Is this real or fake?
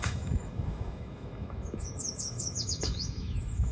fake